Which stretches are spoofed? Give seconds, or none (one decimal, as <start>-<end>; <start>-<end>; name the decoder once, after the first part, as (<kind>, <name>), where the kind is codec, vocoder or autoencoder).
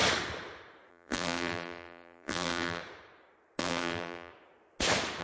0.9-2.8 (vocoder, BigVGAN v2); 3.6-4.3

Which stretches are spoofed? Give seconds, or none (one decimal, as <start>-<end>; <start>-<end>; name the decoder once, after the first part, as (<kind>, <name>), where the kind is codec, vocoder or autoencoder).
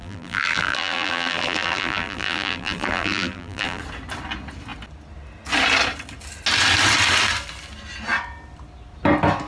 0.0-3.8 (vocoder, BigVGAN v2)